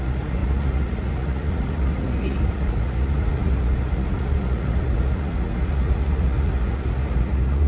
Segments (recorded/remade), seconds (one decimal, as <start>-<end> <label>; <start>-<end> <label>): 0.0-7.7 remade